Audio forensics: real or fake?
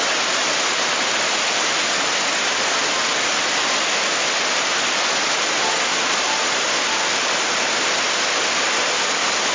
real